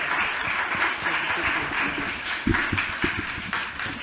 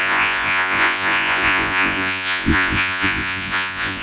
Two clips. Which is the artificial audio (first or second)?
second